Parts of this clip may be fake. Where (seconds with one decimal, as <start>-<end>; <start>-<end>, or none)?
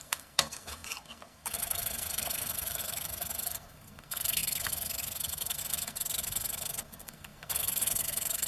0.0-8.5